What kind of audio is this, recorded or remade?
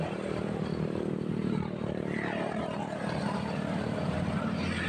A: remade